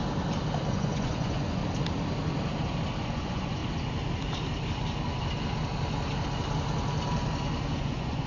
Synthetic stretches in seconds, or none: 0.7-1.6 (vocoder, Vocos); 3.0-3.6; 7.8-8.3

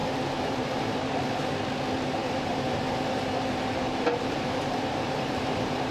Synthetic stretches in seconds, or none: 0.0-1.1 (vocoder, BigVGAN v2); 2.2-5.9

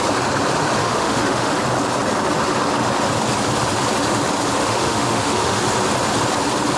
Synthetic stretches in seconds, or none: 0.8-1.5 (autoencoder, DAC-VAE); 4.6-5.6

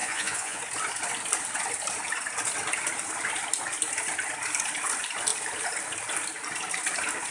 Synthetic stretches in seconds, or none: 0.0-0.6 (vocoder, Vocos)

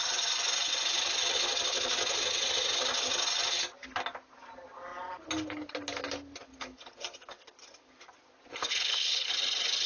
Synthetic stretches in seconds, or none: 8.5-9.3 (codec, HILCodec)

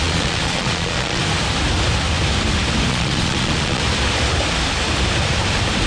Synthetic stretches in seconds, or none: 0.0-1.2 (vocoder, Vocos); 2.9-3.8

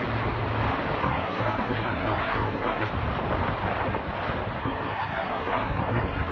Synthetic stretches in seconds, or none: 1.0-2.9 (codec, SNAC); 4.6-6.3